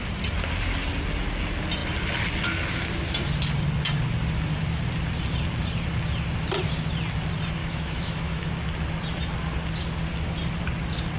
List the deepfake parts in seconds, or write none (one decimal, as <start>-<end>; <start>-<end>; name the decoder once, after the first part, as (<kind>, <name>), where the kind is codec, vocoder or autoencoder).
7.6-8.5 (autoencoder, DAC-VAE)